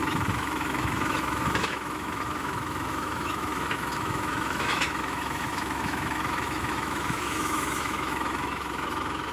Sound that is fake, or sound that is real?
fake